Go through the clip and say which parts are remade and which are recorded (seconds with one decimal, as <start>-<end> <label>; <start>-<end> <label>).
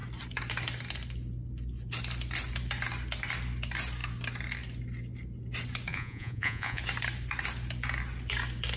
0.0-5.9 recorded; 5.9-6.8 remade; 6.8-8.8 recorded